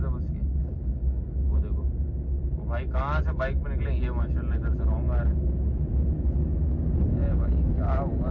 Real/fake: real